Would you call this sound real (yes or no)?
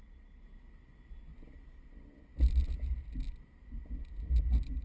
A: yes